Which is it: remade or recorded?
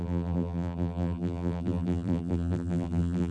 remade